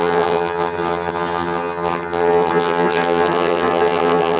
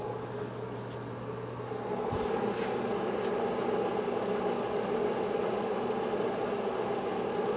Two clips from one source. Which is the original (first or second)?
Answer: second